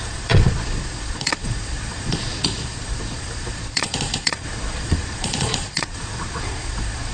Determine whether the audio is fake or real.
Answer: fake